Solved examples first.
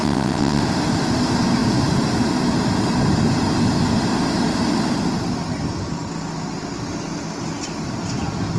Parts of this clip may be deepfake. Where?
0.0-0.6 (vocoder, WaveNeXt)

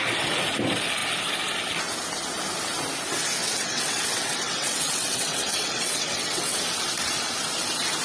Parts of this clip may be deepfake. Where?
3.4-6.6 (vocoder, WaveNeXt)

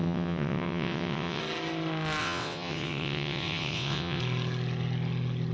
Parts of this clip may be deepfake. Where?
0.0-1.4 (vocoder, WaveNeXt); 2.2-4.2

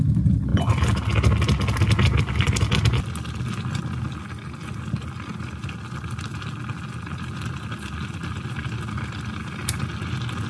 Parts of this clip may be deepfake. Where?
none

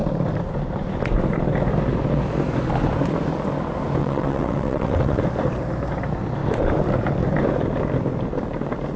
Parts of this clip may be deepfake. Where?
4.0-5.2 (vocoder, WaveNeXt)